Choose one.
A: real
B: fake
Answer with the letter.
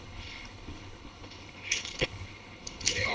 B